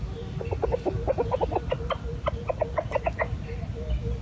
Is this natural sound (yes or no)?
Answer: yes